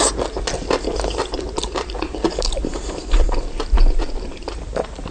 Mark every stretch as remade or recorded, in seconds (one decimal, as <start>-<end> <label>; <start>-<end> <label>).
0.0-1.6 recorded; 1.6-5.1 remade